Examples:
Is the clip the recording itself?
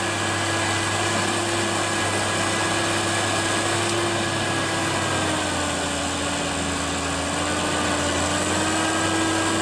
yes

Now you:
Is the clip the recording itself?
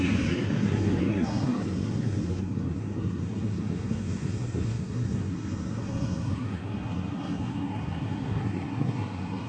no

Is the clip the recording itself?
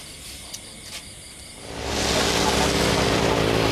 yes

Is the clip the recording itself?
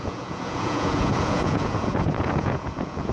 no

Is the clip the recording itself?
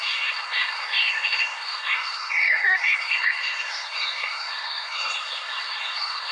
no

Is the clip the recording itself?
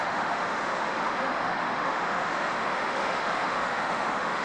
no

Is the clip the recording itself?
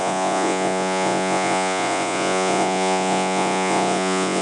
no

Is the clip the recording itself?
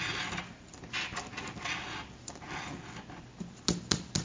yes